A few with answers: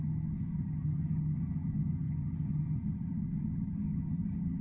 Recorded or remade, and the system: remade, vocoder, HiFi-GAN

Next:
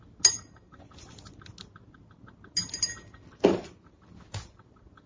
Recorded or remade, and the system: recorded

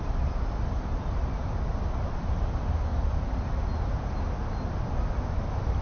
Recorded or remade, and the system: recorded